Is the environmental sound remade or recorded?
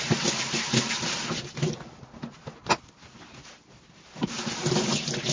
recorded